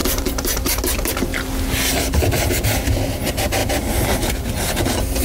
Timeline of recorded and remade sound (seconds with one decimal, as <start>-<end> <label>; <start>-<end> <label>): 0.0-0.8 remade; 0.8-5.2 recorded